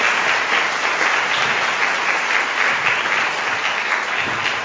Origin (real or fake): real